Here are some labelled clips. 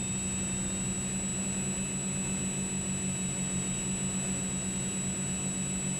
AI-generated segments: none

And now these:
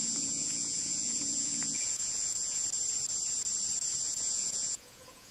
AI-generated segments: 0.0-2.6 (vocoder, Vocos); 4.1-5.3

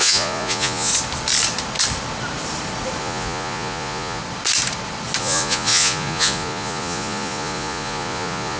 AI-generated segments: 0.0-0.9 (vocoder, Vocos); 3.0-4.2; 5.2-8.6

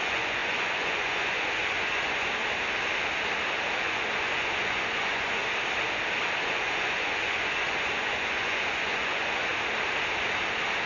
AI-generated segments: 0.0-2.4 (vocoder, Vocos); 3.8-5.4; 6.4-9.5

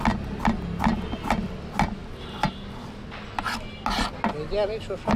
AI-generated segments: none

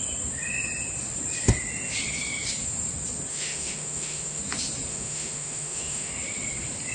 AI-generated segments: 3.3-4.4 (autoencoder, DAC-VAE); 4.9-6.1